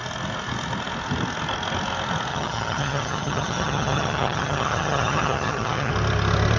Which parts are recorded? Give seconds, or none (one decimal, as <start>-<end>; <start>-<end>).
0.0-2.3; 5.9-6.6